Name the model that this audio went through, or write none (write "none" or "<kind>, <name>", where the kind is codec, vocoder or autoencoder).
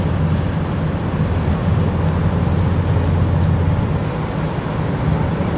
none